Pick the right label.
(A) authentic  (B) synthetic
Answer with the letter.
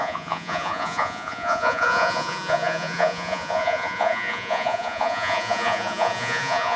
B